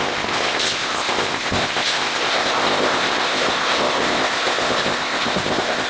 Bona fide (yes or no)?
no